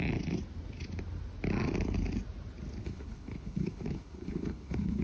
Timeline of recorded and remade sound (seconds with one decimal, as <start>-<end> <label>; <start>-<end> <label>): 0.0-2.8 recorded; 2.8-5.0 remade